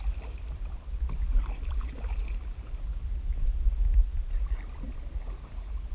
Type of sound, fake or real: real